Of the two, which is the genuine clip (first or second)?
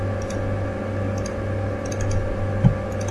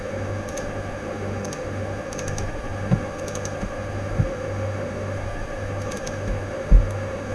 first